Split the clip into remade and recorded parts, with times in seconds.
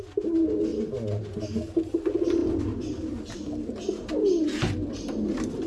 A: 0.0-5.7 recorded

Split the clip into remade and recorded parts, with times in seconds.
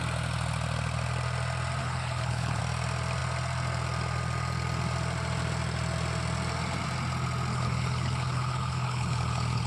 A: 0.0-1.8 recorded; 1.8-2.6 remade; 2.6-7.5 recorded; 7.5-9.7 remade